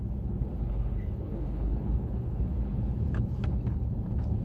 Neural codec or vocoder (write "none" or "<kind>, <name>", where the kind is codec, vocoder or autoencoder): codec, HILCodec